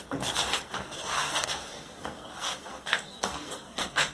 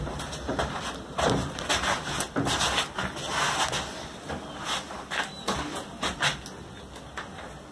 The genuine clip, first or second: second